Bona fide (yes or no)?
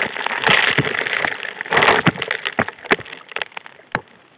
yes